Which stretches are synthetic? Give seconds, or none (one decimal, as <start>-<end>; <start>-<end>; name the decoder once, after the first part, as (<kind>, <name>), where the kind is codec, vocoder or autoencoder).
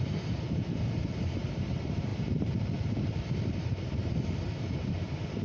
0.0-5.4 (vocoder, BigVGAN v2)